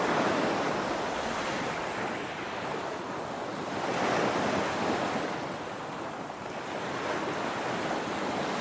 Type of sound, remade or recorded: recorded